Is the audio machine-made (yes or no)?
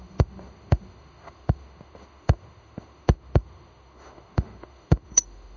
yes